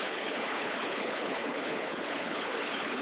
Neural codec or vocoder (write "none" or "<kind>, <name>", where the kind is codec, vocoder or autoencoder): codec, HILCodec